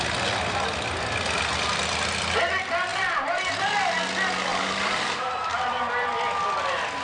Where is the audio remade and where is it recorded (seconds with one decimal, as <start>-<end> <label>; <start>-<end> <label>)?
0.0-2.9 recorded; 2.9-3.5 remade; 3.5-4.5 recorded; 4.5-5.3 remade; 5.3-7.0 recorded

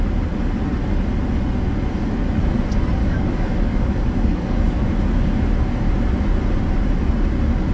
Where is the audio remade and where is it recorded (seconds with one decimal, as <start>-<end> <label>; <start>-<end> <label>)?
0.0-3.0 recorded; 3.0-4.9 remade; 4.9-7.7 recorded

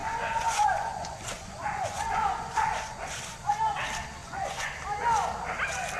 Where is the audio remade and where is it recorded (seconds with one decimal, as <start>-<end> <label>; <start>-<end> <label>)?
0.0-3.6 remade; 3.6-4.2 recorded; 4.2-4.7 remade; 4.7-6.0 recorded

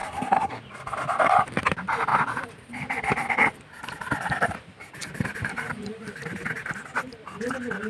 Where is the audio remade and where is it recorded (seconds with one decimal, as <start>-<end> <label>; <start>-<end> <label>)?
0.0-0.6 remade; 0.6-7.9 recorded

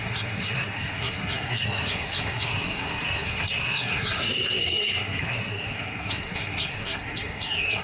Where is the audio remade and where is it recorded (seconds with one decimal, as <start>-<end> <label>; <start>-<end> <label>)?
0.0-7.8 remade

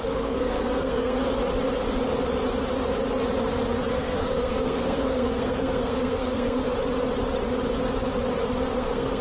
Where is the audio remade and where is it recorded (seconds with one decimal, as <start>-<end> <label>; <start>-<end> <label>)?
0.0-1.2 remade; 1.2-3.9 recorded; 3.9-6.6 remade; 6.6-8.7 recorded; 8.7-9.2 remade

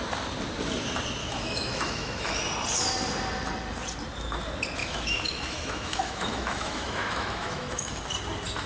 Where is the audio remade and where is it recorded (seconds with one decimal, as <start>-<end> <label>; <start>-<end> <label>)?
0.0-1.2 recorded; 1.2-2.4 remade; 2.4-4.8 recorded; 4.8-8.0 remade; 8.0-8.7 recorded